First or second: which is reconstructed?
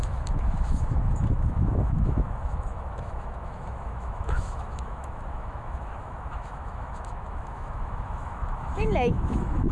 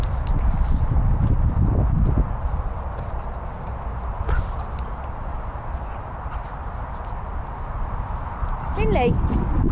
first